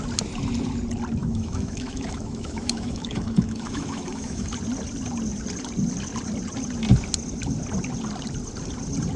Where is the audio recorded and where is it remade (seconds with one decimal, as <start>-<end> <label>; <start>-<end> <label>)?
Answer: 0.0-1.2 recorded; 1.2-4.5 remade; 4.5-9.2 recorded